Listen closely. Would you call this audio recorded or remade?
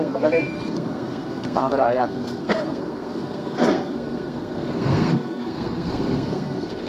remade